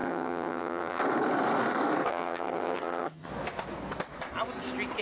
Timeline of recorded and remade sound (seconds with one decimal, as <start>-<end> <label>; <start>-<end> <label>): 0.0-1.0 remade; 1.0-2.1 recorded; 2.1-3.3 remade; 3.3-5.0 recorded